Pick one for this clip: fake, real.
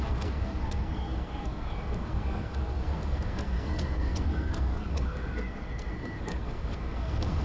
fake